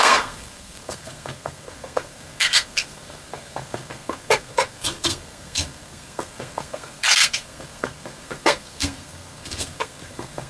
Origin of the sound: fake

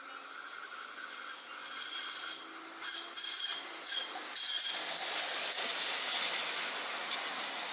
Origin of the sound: real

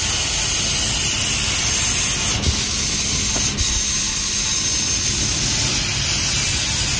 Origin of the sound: real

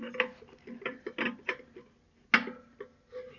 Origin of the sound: real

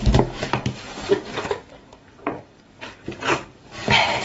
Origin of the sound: fake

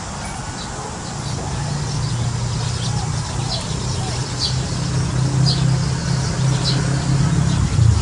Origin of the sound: real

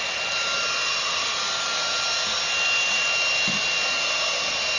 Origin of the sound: real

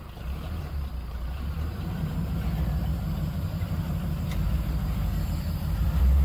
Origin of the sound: fake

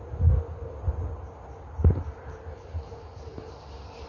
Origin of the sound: real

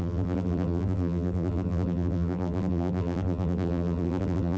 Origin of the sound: fake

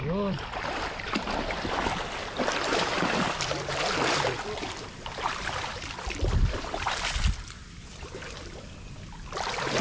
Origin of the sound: fake